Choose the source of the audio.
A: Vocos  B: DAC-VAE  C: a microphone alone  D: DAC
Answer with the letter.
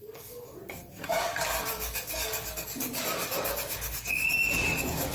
D